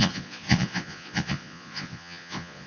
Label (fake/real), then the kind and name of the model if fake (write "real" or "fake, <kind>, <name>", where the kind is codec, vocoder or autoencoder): fake, vocoder, Vocos